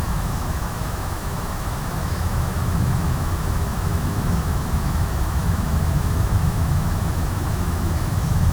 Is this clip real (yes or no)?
no